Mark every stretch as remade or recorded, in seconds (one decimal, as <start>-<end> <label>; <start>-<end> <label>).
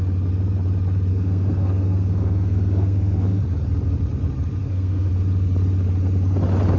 0.0-1.1 recorded; 1.1-3.4 remade; 3.4-4.6 recorded; 4.6-5.1 remade; 5.1-6.8 recorded